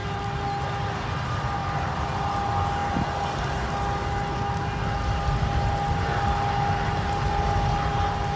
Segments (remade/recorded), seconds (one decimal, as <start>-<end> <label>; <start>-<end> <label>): 0.0-1.6 recorded; 1.6-2.2 remade; 2.2-8.4 recorded